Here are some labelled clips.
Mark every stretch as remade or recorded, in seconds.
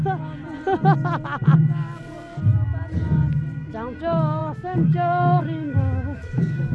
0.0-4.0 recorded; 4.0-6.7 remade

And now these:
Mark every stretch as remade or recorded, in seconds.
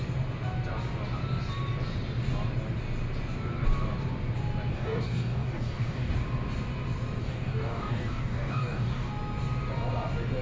0.0-4.7 recorded; 4.7-6.1 remade; 6.1-7.2 recorded; 7.2-9.1 remade; 9.1-10.4 recorded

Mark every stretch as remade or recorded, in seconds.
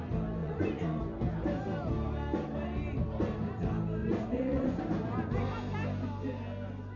0.0-0.4 recorded; 0.4-1.0 remade; 1.0-4.0 recorded; 4.0-4.8 remade; 4.8-7.0 recorded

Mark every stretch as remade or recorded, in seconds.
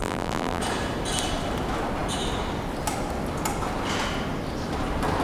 0.0-0.6 remade; 0.6-5.2 recorded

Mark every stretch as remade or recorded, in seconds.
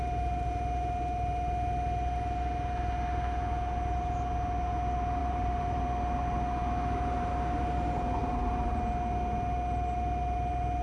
0.0-5.2 recorded; 5.2-5.8 remade; 5.8-8.2 recorded; 8.2-8.8 remade; 8.8-10.8 recorded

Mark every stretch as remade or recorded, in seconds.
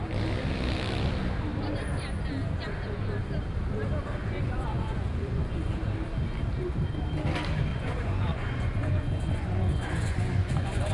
0.0-4.2 recorded; 4.2-5.7 remade; 5.7-7.7 recorded; 7.7-10.9 remade